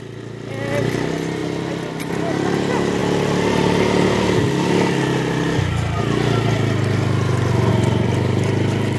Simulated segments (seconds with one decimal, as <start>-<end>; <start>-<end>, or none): none